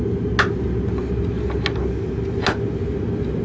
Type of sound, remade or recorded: recorded